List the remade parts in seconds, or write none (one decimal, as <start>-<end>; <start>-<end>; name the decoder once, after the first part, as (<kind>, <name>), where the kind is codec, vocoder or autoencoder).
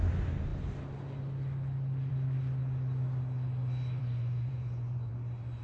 4.0-5.1 (vocoder, Vocos)